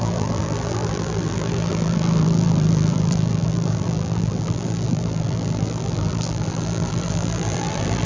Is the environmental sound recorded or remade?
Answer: remade